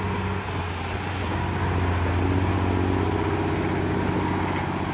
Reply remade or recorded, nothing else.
recorded